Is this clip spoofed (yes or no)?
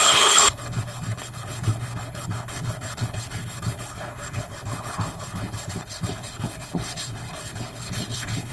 yes